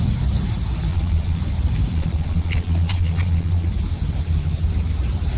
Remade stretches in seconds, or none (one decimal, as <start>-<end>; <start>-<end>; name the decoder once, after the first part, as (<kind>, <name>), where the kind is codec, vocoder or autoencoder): 0.9-1.4 (vocoder, Vocos); 1.9-3.7